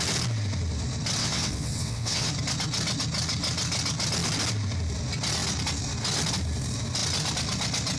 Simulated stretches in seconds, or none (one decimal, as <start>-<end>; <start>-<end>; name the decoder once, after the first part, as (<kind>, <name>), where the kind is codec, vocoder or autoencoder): 1.2-2.3 (vocoder, WaveNeXt)